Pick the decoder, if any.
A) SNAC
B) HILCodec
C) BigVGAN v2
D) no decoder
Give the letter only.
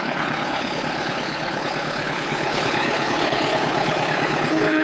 B